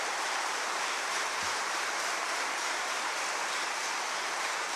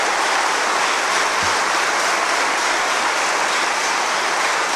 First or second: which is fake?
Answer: first